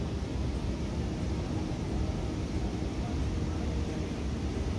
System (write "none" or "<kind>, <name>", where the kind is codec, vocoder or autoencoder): none